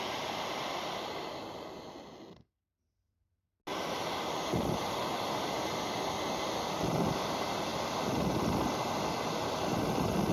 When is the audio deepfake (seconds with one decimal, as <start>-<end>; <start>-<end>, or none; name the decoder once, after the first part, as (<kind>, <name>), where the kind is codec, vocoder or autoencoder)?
none